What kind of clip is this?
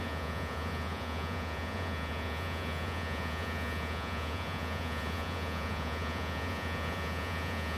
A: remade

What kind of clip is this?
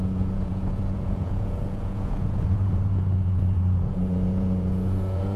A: remade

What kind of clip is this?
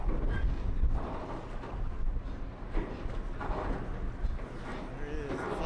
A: recorded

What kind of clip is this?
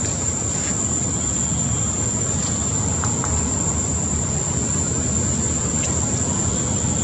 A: recorded